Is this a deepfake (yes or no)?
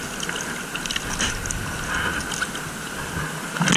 no